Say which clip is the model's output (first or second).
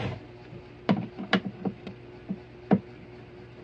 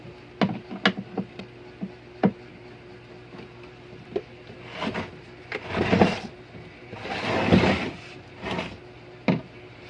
first